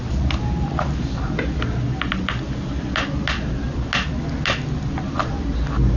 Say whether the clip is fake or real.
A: real